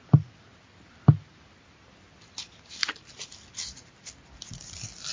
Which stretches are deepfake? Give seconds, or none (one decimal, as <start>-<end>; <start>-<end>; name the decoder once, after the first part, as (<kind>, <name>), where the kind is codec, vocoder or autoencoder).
none